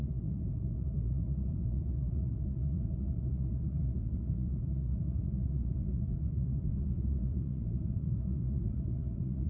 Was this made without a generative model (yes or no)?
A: no